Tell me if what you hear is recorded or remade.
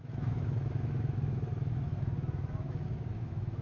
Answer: remade